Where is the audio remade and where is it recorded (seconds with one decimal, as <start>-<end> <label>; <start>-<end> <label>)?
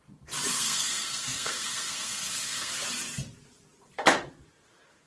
0.0-0.5 recorded; 0.5-2.7 remade; 2.7-5.1 recorded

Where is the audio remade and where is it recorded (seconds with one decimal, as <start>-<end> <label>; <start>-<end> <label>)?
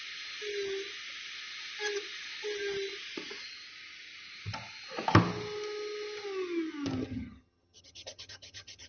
0.0-7.0 recorded; 7.0-8.9 remade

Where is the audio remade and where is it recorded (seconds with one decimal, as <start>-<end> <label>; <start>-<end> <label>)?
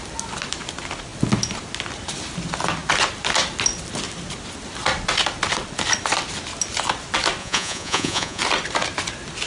0.0-7.4 recorded; 7.4-8.4 remade; 8.4-9.5 recorded